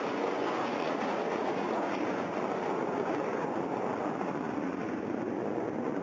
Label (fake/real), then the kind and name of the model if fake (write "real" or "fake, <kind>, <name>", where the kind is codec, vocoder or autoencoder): fake, vocoder, Vocos